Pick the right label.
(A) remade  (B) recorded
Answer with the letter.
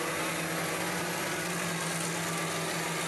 B